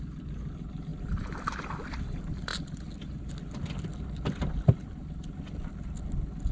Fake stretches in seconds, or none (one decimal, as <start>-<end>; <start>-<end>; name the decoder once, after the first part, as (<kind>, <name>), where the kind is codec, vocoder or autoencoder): none